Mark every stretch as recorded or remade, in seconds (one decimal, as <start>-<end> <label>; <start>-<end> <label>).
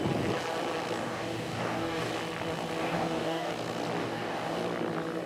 0.0-1.0 recorded; 1.0-2.1 remade; 2.1-2.8 recorded; 2.8-3.5 remade; 3.5-4.0 recorded; 4.0-4.6 remade; 4.6-5.3 recorded